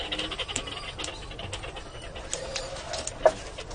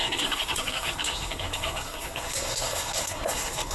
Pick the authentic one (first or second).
first